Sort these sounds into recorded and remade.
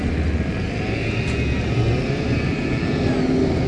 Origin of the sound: recorded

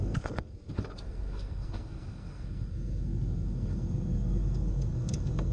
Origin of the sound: remade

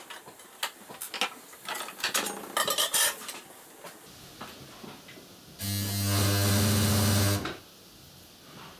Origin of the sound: recorded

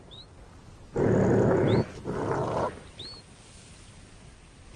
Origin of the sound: recorded